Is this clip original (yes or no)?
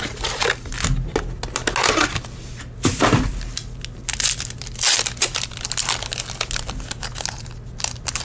yes